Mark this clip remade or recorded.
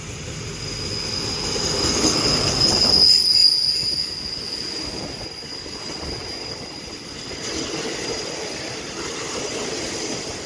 recorded